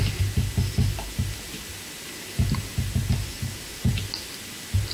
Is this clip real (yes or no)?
yes